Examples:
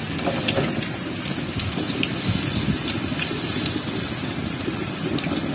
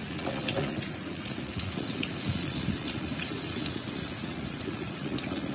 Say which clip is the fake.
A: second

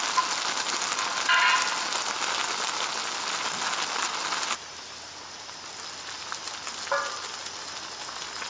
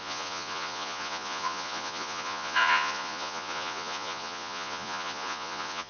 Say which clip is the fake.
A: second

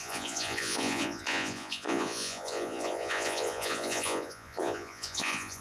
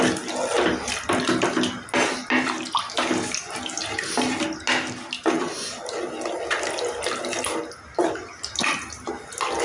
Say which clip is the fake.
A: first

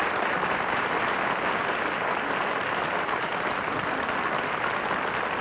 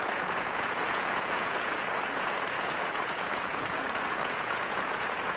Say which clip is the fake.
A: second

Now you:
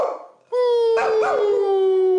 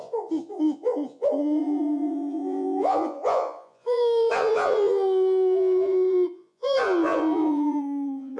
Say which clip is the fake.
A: second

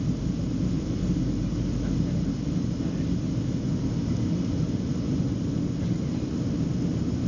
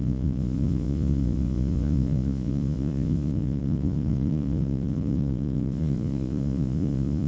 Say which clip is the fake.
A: second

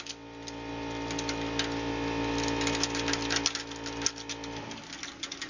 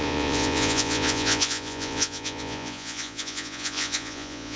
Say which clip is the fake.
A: second